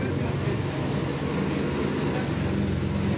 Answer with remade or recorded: recorded